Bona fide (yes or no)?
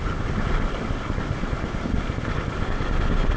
yes